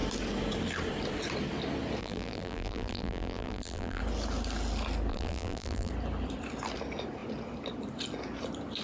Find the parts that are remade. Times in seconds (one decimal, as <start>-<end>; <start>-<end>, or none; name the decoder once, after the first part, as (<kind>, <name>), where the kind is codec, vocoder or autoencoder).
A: 2.0-4.0 (vocoder, BigVGAN v2); 5.1-5.9